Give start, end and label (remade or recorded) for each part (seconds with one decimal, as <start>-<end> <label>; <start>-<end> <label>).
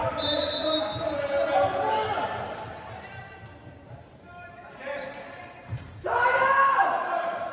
0.0-2.1 remade; 2.1-2.8 recorded; 2.8-7.5 remade